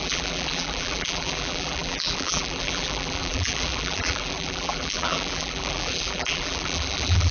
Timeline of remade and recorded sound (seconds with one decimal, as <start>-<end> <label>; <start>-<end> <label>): 0.0-7.3 remade